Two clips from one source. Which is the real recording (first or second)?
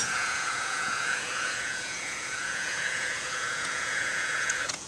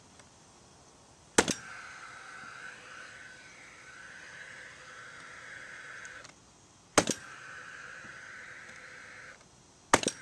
second